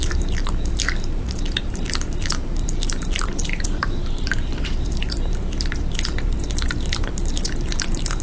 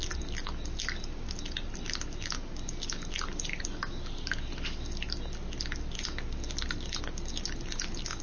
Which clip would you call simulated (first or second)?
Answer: first